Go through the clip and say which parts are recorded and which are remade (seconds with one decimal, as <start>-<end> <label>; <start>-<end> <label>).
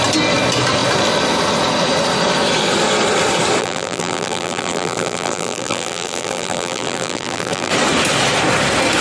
0.0-3.6 recorded; 3.6-7.7 remade; 7.7-9.0 recorded